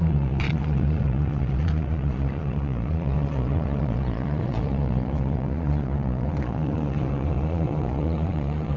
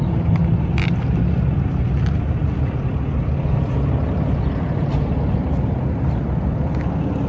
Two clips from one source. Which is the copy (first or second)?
first